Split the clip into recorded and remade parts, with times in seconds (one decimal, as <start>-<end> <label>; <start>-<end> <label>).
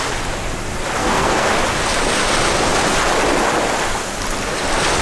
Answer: 0.0-1.0 recorded; 1.0-1.5 remade; 1.5-5.0 recorded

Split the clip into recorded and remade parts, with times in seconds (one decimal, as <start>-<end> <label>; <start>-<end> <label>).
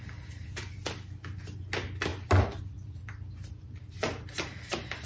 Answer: 0.0-2.1 recorded; 2.1-5.1 remade